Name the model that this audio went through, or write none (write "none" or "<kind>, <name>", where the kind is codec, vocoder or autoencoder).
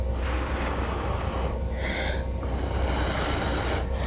none